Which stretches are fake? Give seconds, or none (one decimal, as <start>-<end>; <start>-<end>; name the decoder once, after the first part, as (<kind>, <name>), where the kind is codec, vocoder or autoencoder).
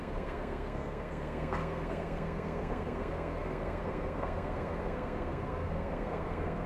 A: 0.0-6.7 (codec, SNAC)